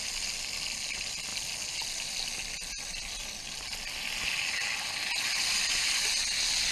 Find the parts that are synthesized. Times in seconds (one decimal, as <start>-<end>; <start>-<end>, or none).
none